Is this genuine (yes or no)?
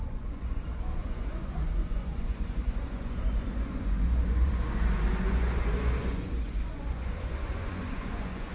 no